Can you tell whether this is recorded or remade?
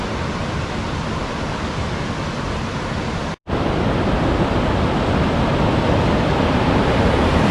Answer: recorded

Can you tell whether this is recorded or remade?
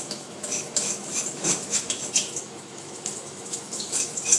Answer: remade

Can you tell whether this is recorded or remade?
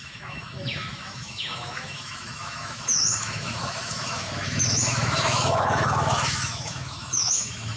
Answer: remade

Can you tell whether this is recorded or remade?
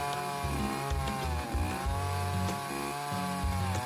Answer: recorded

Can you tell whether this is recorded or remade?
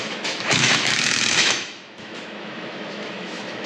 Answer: remade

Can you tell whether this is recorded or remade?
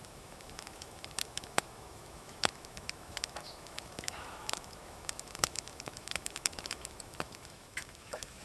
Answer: remade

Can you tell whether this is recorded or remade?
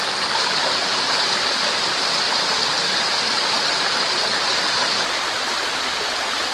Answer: recorded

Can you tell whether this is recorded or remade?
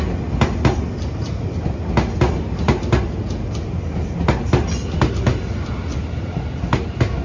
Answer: recorded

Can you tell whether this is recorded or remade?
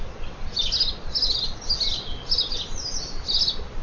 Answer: recorded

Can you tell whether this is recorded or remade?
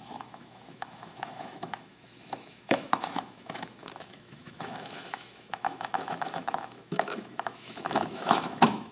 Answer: remade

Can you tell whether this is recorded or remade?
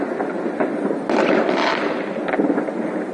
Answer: recorded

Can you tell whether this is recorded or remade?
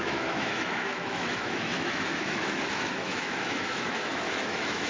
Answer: remade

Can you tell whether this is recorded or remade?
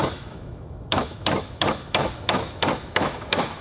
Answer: remade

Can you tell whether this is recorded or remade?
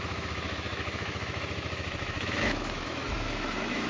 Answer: remade